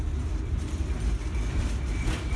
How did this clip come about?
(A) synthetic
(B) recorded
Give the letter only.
B